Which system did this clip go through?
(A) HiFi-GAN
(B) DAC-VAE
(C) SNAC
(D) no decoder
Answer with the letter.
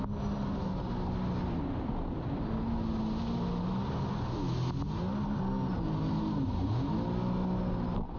D